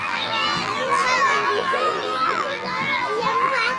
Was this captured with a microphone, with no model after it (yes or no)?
no